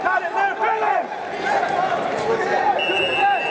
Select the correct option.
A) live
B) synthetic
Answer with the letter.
A